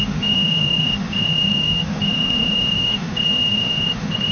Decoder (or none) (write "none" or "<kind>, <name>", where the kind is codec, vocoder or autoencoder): autoencoder, DAC-VAE